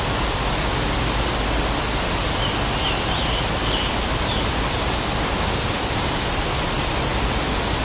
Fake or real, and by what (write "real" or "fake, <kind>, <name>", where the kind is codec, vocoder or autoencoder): real